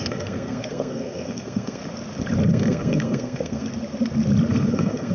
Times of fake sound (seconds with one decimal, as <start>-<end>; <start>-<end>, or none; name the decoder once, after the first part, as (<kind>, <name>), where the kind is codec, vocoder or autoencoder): 0.0-1.8 (codec, SNAC); 2.5-3.7; 4.5-5.1